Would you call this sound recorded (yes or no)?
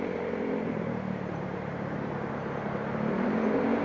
no